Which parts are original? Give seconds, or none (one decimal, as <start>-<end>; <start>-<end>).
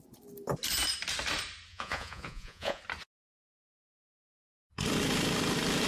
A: 0.0-1.7; 2.8-5.9